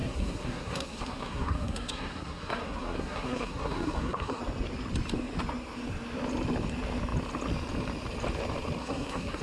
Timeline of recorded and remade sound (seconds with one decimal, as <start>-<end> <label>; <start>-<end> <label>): 0.0-4.4 remade; 4.4-8.8 recorded; 8.8-9.4 remade